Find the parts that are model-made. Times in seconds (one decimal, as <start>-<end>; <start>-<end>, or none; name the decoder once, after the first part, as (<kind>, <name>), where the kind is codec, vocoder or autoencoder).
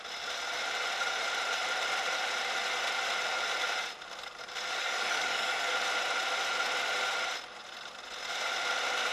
4.8-5.7 (codec, DAC)